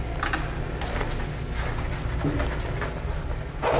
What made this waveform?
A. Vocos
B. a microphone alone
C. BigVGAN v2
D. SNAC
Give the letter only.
B